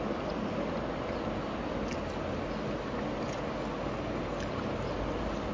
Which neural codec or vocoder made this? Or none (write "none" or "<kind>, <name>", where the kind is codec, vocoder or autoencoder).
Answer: none